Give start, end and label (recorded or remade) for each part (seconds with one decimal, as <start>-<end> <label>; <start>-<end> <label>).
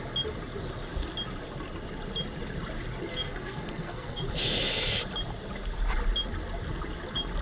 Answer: 0.0-3.1 recorded; 3.1-4.2 remade; 4.2-7.4 recorded